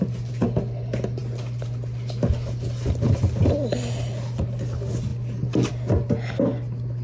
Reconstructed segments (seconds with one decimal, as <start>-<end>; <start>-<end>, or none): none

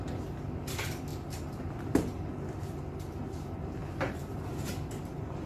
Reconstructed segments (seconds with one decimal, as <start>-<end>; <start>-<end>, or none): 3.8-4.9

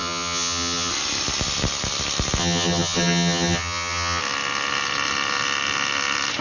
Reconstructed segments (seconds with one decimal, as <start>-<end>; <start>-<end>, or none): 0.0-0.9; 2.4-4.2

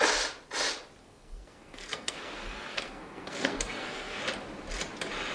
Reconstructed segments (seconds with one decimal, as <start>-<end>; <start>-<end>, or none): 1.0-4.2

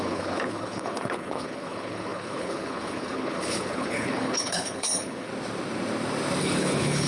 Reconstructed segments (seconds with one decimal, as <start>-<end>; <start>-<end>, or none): 0.0-5.3; 6.4-7.1

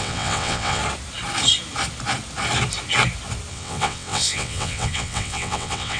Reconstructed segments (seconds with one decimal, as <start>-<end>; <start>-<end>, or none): 0.0-0.8; 3.5-6.0

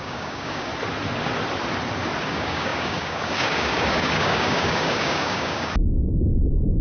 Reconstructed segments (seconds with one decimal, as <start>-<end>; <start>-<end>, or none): 0.0-0.7; 2.3-6.8